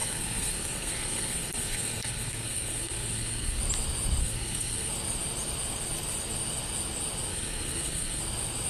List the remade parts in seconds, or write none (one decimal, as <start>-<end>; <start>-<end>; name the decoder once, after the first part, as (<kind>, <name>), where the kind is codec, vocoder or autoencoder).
0.0-3.6 (codec, SNAC); 4.2-4.9; 7.3-8.2